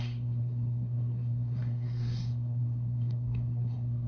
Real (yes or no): no